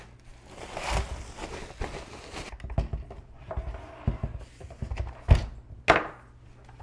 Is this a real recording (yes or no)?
yes